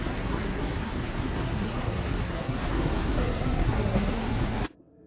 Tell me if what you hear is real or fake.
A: fake